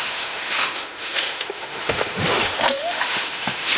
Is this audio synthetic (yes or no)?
yes